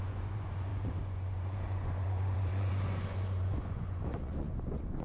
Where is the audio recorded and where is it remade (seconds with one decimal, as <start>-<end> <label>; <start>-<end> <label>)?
0.0-5.0 remade